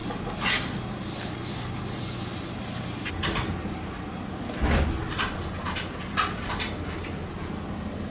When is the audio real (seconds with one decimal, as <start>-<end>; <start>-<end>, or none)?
0.0-8.1